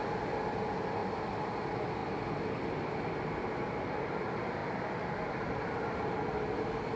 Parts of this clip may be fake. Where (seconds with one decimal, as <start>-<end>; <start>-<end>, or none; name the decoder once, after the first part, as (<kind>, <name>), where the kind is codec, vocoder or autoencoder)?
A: 1.0-1.5 (vocoder, BigVGAN v2)